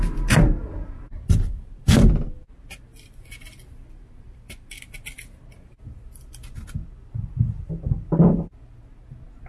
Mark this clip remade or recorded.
recorded